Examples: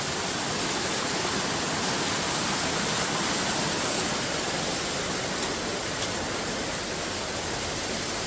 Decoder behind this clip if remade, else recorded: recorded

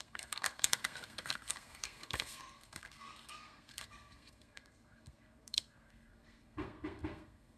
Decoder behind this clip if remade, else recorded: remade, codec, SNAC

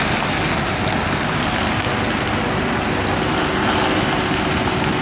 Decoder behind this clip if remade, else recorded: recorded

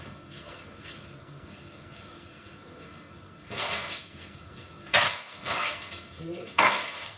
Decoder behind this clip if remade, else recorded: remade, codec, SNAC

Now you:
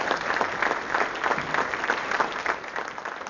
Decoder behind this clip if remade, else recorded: recorded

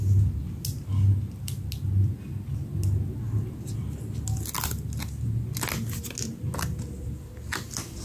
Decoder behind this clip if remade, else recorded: recorded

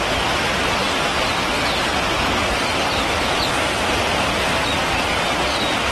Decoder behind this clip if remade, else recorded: recorded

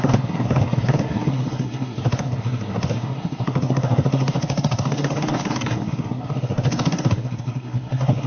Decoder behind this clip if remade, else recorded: remade, codec, SNAC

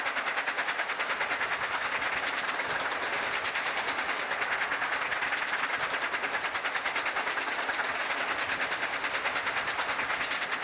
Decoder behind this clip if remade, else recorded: recorded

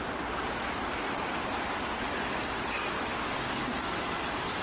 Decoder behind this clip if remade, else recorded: recorded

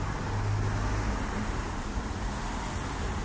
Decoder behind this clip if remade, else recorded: recorded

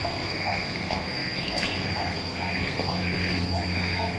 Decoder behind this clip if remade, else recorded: remade, codec, SNAC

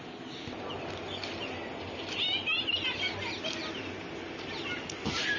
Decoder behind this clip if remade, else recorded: recorded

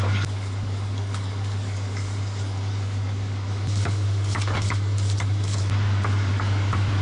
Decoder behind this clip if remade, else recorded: remade, codec, DAC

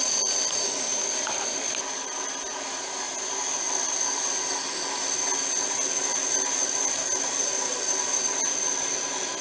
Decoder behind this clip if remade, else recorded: recorded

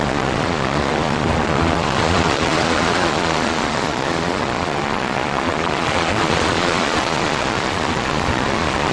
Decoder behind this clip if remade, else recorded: remade, vocoder, Vocos